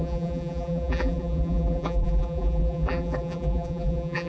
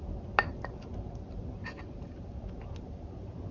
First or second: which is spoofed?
first